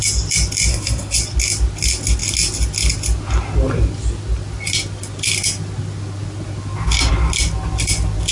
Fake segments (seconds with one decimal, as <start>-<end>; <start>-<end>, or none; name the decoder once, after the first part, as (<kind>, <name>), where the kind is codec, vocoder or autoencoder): 0.7-1.2 (codec, SNAC)